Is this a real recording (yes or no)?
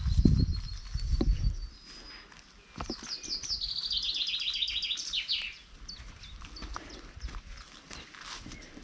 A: yes